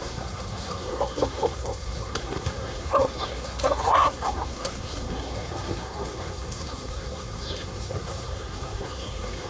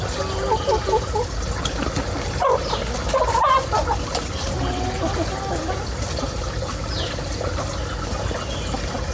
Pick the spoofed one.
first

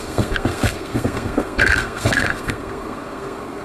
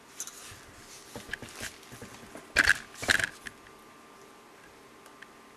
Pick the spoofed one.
first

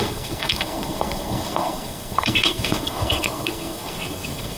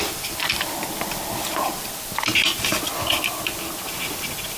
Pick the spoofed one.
first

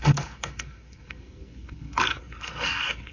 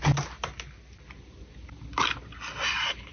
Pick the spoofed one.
first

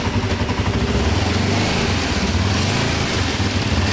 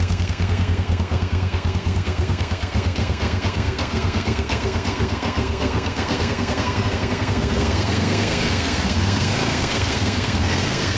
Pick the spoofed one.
second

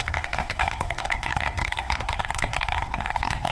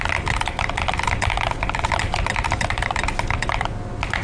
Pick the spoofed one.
first